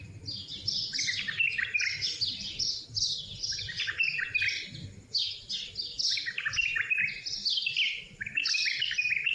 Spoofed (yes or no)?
no